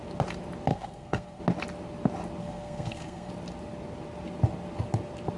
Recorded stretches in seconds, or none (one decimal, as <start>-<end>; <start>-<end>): 0.0-0.7; 1.4-2.4; 3.3-5.4